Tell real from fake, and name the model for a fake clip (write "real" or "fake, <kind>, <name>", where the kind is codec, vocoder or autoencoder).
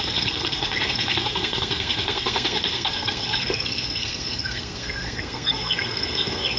fake, codec, SNAC